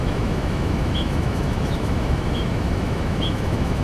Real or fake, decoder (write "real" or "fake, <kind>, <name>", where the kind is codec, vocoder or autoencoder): fake, autoencoder, DAC-VAE